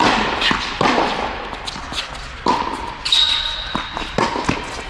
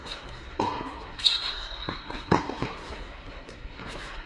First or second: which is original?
first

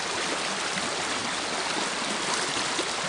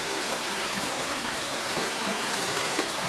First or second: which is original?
first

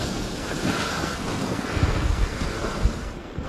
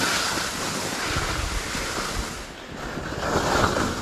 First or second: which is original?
second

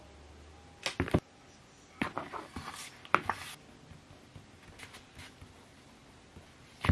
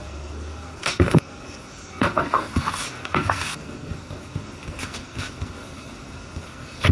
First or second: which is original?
first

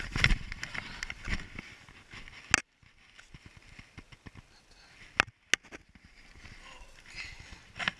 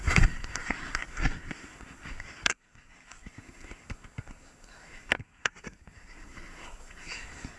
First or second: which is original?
first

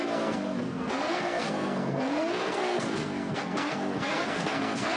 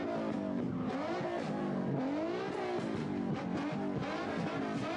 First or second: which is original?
second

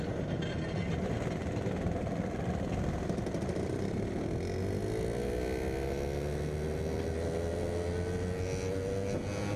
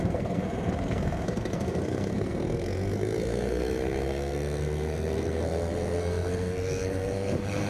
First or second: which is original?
first